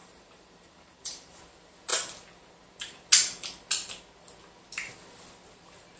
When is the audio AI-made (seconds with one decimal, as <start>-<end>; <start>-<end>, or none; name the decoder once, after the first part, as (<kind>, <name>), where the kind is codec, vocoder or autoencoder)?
0.0-1.4 (vocoder, BigVGAN v2)